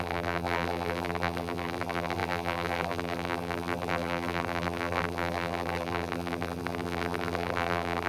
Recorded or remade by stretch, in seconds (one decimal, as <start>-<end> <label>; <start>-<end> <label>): 0.0-8.1 remade